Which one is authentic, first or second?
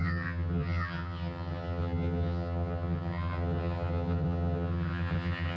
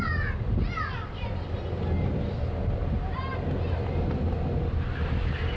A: second